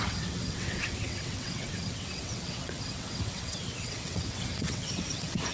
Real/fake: fake